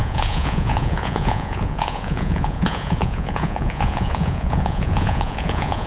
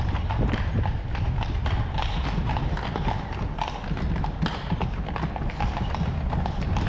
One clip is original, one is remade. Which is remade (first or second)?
first